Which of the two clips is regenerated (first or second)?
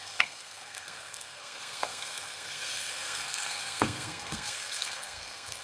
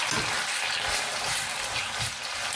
first